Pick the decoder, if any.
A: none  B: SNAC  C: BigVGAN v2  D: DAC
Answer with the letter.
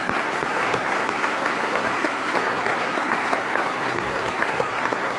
B